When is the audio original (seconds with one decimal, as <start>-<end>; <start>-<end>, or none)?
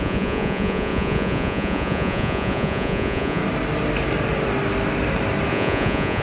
3.4-5.5